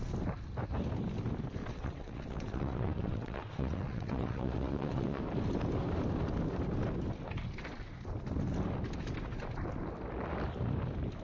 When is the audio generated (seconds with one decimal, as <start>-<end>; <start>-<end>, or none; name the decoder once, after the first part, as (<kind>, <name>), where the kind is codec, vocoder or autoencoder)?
1.6-5.2 (vocoder, WaveNeXt)